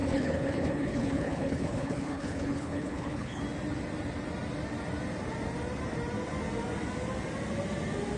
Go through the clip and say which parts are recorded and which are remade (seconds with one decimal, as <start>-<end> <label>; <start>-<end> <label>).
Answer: 0.0-3.4 remade; 3.4-8.2 recorded